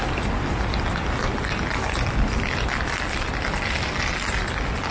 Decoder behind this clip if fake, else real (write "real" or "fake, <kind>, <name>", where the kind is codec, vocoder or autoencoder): real